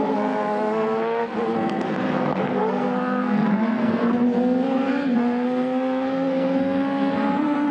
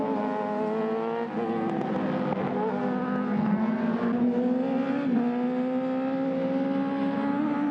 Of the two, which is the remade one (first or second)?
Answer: first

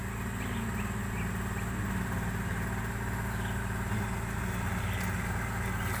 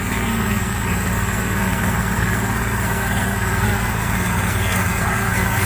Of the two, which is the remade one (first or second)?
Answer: second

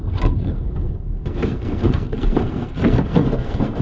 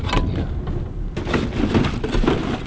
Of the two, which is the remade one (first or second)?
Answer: first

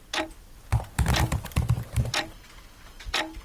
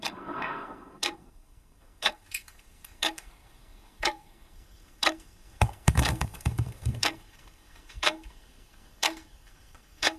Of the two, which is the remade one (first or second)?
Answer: second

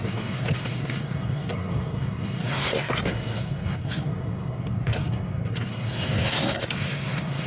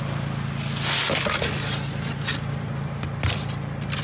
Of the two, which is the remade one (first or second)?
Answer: first